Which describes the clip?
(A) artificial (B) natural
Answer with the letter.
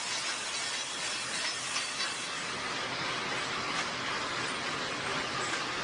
B